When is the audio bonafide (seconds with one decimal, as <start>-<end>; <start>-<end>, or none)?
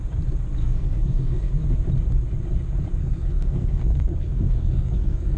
0.0-0.6; 1.5-3.0